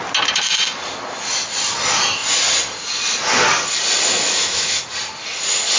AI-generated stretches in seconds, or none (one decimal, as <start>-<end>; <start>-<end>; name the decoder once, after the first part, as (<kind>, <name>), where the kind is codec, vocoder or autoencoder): 4.1-4.8 (autoencoder, DAC-VAE)